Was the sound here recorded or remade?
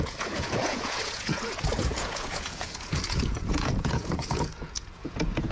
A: remade